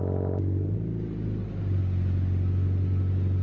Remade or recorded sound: recorded